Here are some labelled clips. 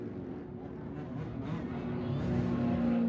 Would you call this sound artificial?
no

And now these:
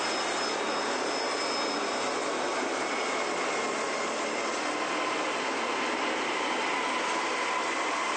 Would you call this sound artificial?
no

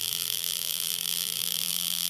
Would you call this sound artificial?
yes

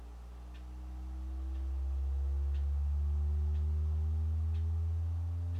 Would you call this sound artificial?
no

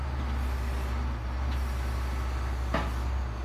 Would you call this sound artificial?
no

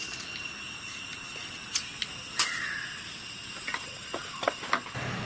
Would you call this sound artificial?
no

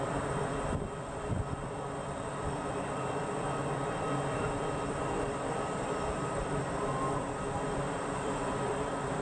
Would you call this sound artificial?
yes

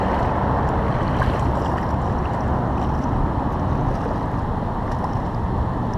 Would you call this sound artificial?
no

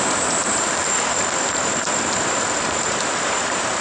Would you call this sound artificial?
yes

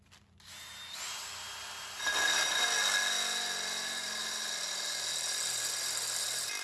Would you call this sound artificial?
no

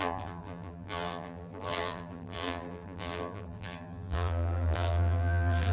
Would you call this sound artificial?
yes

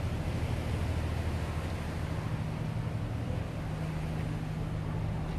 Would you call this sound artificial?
no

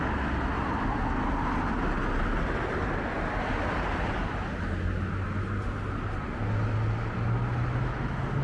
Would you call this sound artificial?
no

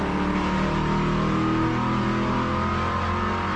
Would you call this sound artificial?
no